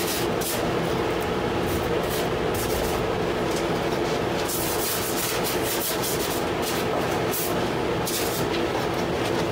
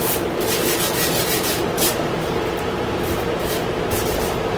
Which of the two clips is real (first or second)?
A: first